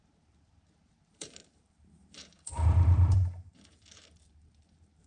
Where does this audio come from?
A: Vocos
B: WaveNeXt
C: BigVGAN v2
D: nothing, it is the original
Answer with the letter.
C